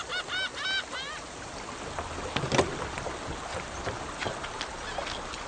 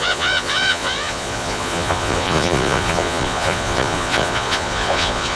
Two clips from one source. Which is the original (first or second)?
first